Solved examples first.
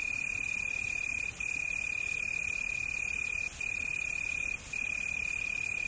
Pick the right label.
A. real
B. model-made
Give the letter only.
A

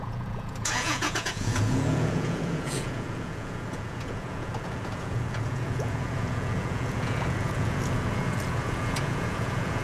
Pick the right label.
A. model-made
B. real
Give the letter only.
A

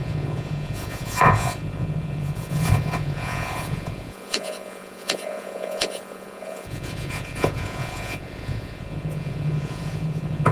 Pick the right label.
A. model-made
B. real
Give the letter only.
A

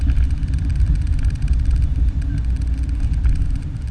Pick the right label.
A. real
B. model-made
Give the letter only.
A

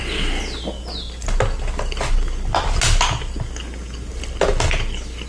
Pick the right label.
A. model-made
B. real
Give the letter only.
B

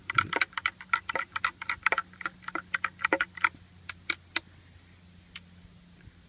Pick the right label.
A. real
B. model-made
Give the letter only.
A